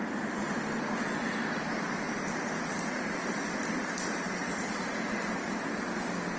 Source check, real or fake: real